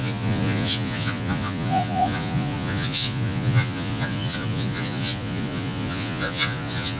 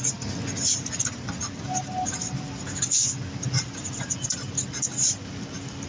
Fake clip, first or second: first